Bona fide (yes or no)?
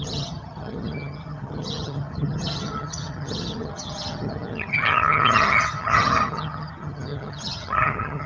no